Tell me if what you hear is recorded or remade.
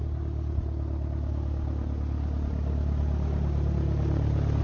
recorded